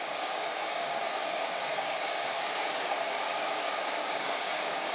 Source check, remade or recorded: remade